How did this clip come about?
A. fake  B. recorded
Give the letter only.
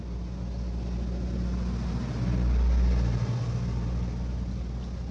B